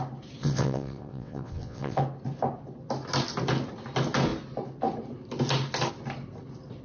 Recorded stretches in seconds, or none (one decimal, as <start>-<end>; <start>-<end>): 0.0-0.4; 2.0-6.8